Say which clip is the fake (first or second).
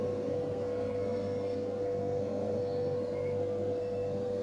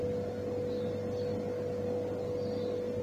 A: first